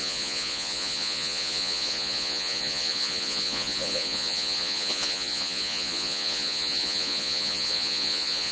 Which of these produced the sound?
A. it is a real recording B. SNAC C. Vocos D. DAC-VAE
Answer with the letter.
C